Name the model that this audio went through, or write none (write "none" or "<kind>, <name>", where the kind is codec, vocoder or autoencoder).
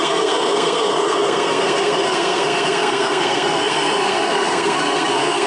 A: codec, SNAC